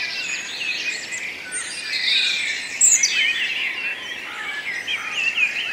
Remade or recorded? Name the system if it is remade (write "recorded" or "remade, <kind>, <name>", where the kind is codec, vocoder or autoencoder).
recorded